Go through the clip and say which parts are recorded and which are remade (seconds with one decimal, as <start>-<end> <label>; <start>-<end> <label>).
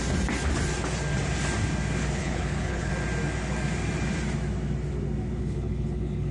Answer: 0.0-2.2 recorded; 2.2-2.9 remade; 2.9-5.4 recorded; 5.4-6.3 remade